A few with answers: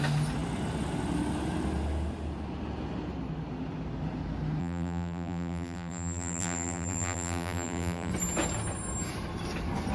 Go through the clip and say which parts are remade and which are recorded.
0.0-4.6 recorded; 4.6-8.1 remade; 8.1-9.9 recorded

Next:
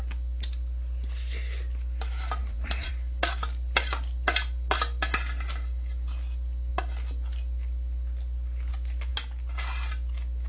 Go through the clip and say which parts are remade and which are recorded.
0.0-2.4 recorded; 2.4-2.9 remade; 2.9-10.5 recorded

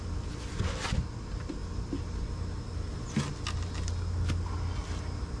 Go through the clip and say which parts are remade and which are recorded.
0.0-5.4 recorded

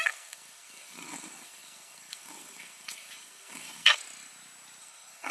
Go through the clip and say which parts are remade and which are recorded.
0.0-4.0 remade; 4.0-4.8 recorded; 4.8-5.3 remade

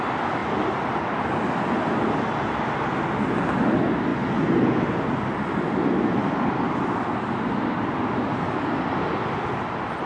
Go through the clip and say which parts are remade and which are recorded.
0.0-10.1 recorded

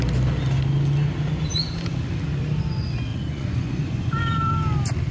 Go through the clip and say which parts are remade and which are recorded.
0.0-3.1 recorded; 3.1-4.2 remade; 4.2-5.1 recorded

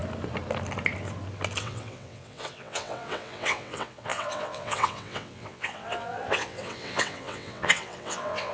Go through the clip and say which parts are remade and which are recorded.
0.0-1.6 recorded; 1.6-8.5 remade